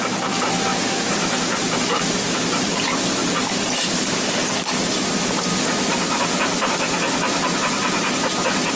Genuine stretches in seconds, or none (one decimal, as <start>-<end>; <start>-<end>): 0.0-8.8